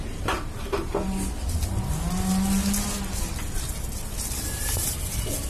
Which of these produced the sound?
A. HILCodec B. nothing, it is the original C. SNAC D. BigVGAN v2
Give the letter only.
B